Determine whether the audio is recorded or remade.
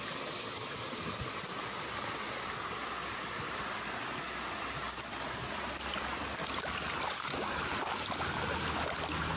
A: recorded